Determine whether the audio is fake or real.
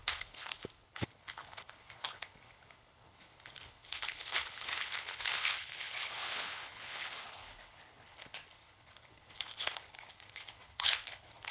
fake